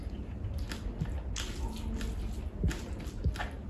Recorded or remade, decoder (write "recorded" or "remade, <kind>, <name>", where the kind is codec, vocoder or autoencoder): recorded